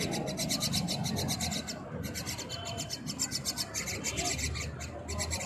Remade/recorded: recorded